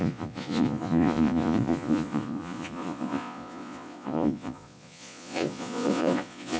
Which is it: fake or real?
fake